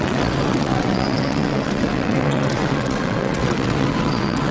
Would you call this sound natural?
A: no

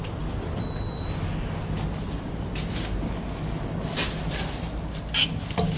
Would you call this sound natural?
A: yes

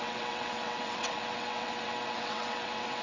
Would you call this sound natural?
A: no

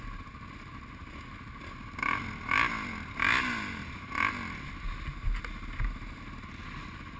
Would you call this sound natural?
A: yes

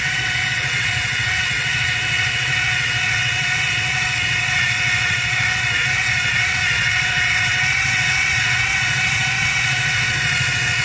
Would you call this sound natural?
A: no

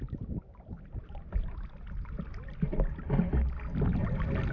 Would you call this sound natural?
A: yes